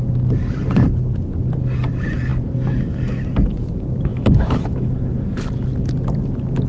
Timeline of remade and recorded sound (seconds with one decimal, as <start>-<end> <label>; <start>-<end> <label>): 0.0-4.1 recorded; 4.1-5.3 remade; 5.3-6.7 recorded